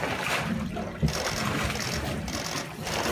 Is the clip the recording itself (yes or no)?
yes